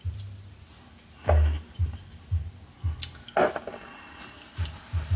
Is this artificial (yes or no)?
no